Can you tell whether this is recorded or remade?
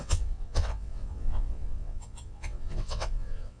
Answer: remade